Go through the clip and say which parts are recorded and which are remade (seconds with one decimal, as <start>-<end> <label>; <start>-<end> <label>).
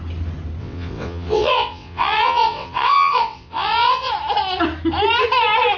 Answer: 0.0-0.6 recorded; 0.6-4.1 remade; 4.1-5.8 recorded